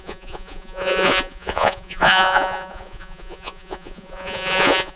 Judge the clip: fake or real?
fake